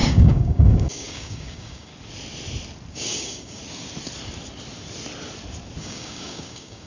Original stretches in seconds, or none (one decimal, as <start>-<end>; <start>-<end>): 1.9-2.9; 3.6-5.8